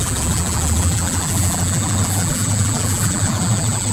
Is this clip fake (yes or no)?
yes